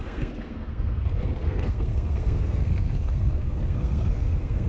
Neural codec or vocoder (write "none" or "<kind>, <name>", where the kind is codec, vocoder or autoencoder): codec, SNAC